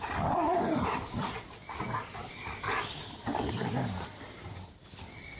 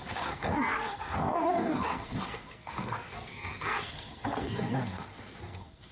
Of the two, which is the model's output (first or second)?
second